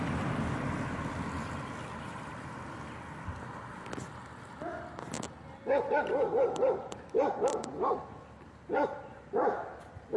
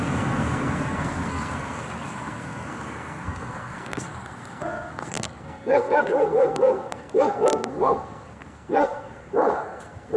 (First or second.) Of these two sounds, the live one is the first